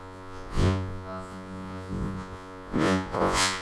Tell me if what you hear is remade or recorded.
remade